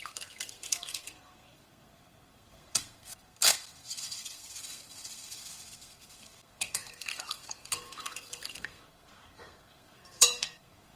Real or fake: fake